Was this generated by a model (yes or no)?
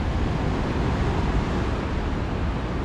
no